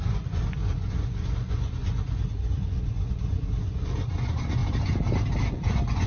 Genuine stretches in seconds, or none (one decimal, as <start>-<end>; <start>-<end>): 4.6-5.5